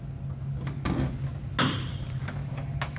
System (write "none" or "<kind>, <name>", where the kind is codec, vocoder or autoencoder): none